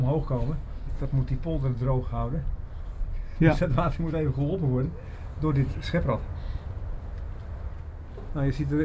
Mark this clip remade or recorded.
recorded